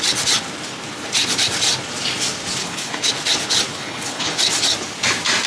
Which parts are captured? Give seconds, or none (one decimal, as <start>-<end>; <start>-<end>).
0.0-2.6; 3.1-3.7; 4.4-5.5